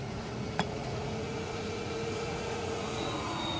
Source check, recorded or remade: remade